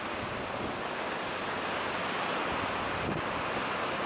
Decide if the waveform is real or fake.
real